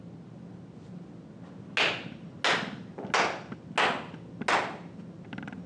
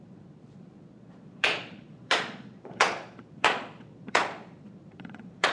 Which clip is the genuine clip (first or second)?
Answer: first